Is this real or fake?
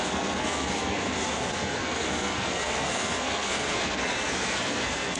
fake